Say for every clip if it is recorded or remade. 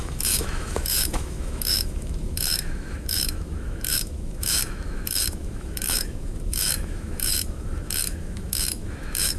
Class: remade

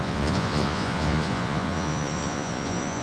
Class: remade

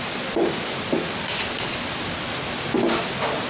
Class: recorded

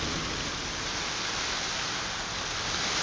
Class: recorded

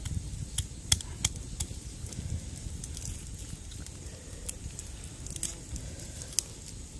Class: recorded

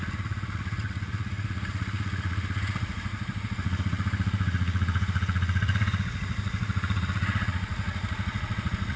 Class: remade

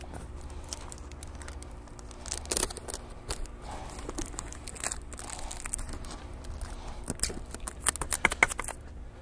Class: recorded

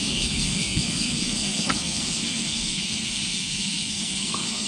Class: remade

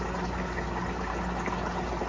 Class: recorded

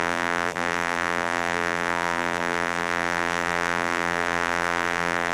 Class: remade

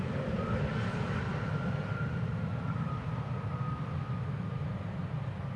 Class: recorded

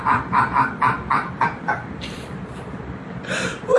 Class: remade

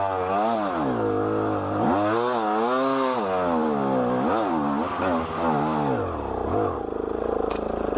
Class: recorded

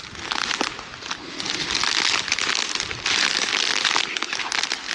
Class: recorded